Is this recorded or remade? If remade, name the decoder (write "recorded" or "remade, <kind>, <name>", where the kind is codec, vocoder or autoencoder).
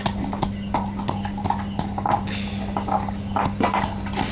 recorded